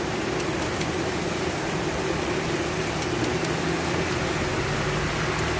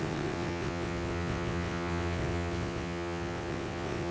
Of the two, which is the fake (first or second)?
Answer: second